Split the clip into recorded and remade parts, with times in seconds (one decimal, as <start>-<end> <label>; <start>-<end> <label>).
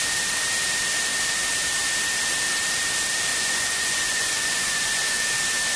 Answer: 0.0-3.3 recorded; 3.3-5.3 remade; 5.3-5.8 recorded